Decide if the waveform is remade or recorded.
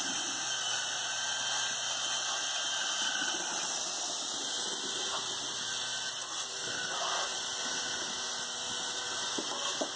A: recorded